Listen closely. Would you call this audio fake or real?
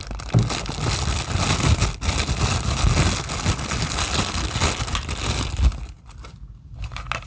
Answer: real